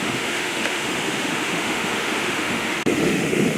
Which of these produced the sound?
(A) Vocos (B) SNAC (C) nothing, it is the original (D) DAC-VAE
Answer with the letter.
D